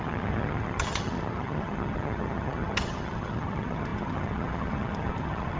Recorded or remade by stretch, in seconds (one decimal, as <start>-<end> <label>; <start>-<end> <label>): 0.0-5.6 remade